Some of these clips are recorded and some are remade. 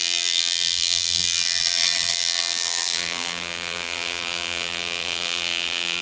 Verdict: remade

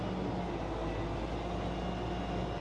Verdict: recorded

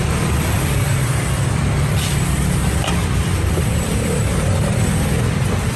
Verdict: remade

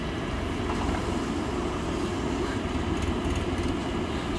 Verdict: recorded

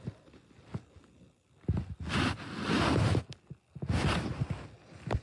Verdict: recorded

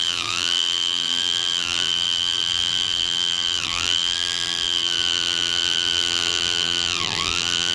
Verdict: remade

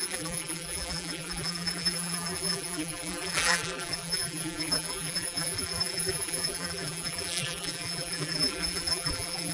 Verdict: remade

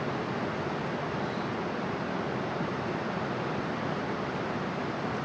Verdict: recorded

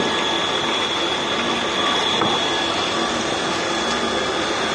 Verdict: recorded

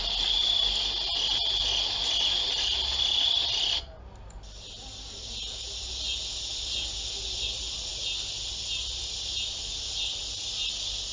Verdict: recorded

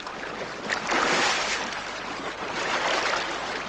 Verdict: recorded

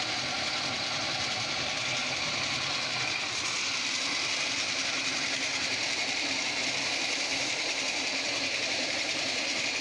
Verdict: remade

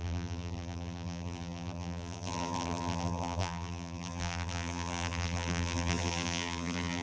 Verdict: remade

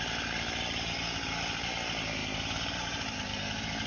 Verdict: remade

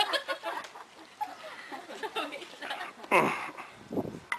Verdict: recorded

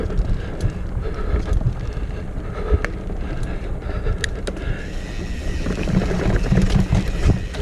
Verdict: recorded